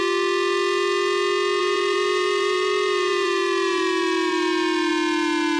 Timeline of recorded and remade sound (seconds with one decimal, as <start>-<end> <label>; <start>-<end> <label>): 0.0-1.6 recorded; 1.6-4.9 remade; 4.9-5.6 recorded